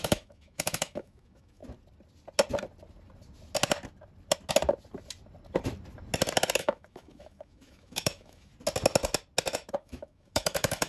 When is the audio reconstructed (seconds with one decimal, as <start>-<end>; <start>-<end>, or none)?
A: 0.0-1.6; 6.6-8.5; 9.5-10.9